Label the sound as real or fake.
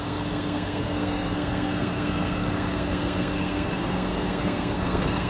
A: fake